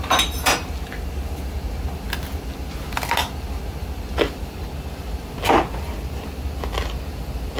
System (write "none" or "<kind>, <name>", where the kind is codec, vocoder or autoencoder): none